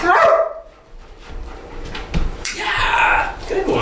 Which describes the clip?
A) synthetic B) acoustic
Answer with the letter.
A